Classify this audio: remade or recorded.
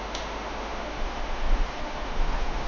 remade